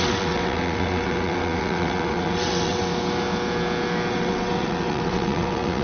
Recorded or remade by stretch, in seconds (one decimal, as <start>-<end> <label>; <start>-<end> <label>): 0.0-2.9 remade; 2.9-4.1 recorded; 4.1-5.8 remade